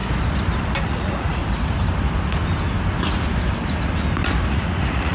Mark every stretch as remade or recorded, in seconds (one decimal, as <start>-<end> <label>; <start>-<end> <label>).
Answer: 0.0-0.8 recorded; 0.8-1.4 remade; 1.4-4.5 recorded; 4.5-5.1 remade